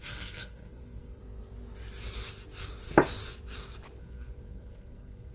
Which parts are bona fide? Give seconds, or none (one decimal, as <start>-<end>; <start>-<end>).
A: 1.2-4.0